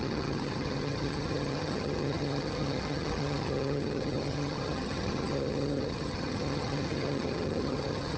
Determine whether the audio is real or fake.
fake